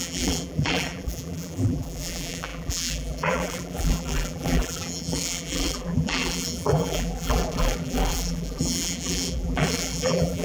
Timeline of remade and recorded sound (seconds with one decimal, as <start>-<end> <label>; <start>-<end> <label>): 0.0-10.4 remade